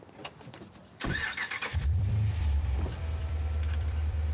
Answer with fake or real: fake